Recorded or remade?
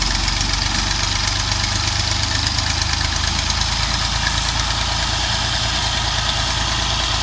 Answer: recorded